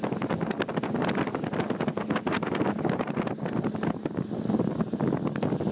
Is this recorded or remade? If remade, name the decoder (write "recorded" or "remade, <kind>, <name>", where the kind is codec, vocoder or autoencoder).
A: recorded